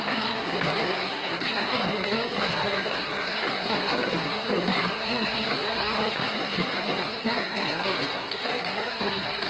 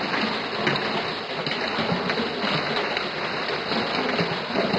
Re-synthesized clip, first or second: first